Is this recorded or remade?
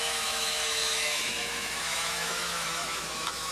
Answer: remade